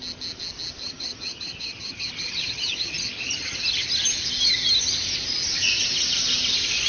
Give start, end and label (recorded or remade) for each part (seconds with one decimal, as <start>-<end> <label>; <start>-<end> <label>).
0.0-0.8 recorded; 0.8-3.6 remade; 3.6-6.9 recorded

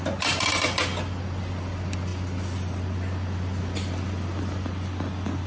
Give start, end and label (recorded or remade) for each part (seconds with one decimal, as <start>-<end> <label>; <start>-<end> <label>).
0.0-5.5 recorded

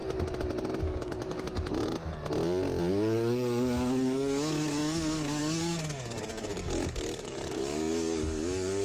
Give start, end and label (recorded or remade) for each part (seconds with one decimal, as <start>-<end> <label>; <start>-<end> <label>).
0.0-0.8 recorded; 0.8-1.7 remade; 1.7-2.9 recorded; 2.9-8.8 remade